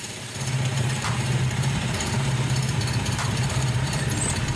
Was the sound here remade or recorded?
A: remade